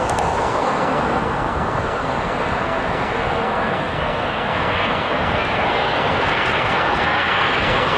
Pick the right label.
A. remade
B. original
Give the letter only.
A